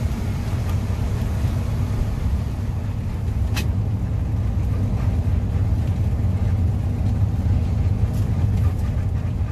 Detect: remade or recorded recorded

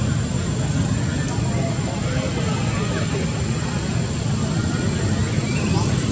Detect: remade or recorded recorded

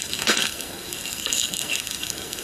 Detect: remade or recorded remade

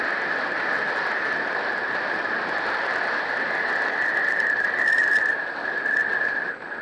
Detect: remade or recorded recorded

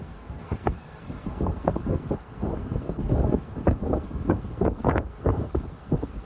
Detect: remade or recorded remade